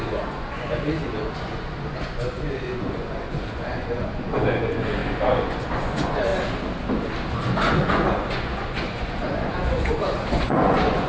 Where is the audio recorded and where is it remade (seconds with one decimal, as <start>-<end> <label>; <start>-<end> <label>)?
0.0-6.3 remade; 6.3-7.3 recorded; 7.3-11.1 remade